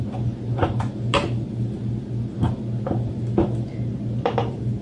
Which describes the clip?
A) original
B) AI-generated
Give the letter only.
A